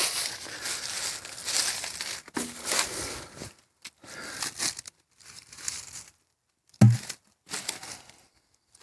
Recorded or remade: recorded